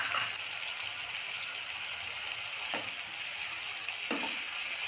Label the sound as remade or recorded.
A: recorded